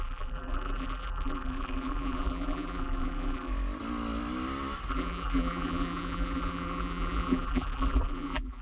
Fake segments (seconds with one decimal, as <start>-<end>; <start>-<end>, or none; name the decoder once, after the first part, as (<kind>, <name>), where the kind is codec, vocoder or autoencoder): 0.0-3.5 (vocoder, BigVGAN v2); 4.9-8.6

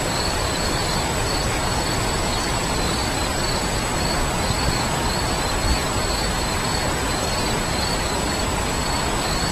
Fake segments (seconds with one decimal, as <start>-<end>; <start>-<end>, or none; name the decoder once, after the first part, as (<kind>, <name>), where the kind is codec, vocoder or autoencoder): none

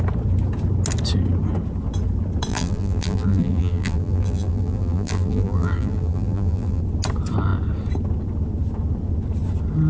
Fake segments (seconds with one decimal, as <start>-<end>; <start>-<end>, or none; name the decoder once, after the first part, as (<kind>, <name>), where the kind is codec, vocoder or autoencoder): 2.5-6.8 (vocoder, BigVGAN v2)

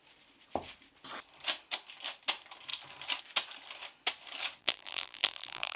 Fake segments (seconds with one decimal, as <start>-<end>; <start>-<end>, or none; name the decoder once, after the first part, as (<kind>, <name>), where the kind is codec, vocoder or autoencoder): 4.6-5.8 (vocoder, BigVGAN v2)

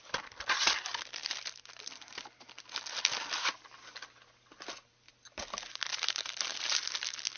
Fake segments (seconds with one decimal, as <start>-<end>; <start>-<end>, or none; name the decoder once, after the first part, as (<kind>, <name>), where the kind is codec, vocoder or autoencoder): 5.9-6.8 (vocoder, BigVGAN v2)